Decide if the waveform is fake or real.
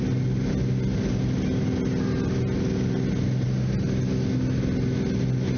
real